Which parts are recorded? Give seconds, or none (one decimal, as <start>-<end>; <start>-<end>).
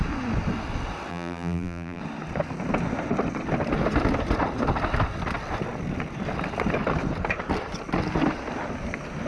0.0-1.1; 2.0-9.3